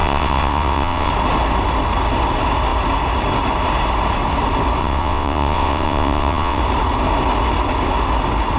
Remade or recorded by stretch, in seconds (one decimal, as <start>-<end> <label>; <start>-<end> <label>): 0.0-1.1 remade; 1.1-4.8 recorded; 4.8-6.6 remade; 6.6-8.6 recorded